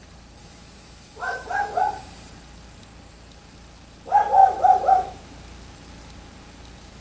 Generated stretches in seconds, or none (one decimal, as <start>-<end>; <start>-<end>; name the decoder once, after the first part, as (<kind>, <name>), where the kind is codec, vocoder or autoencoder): 0.4-1.9 (autoencoder, DAC-VAE); 4.4-5.4